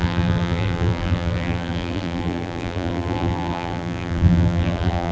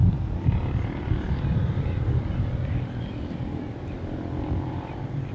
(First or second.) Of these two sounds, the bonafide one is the second